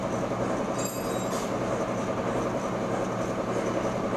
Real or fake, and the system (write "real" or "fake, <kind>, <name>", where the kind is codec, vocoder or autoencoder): real